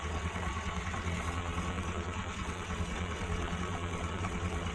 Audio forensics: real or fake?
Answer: fake